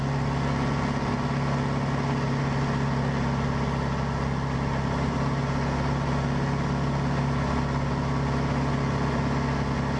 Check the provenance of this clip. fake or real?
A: real